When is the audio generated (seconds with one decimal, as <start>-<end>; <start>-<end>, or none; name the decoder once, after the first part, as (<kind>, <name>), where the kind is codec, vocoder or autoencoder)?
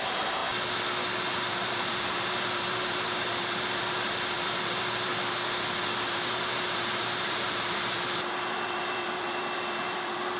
0.0-0.4 (vocoder, BigVGAN v2); 1.3-5.1; 6.1-10.4